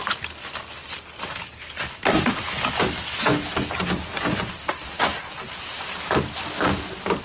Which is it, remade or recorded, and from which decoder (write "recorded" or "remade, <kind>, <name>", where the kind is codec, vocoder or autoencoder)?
recorded